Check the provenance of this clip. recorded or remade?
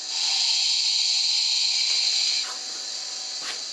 recorded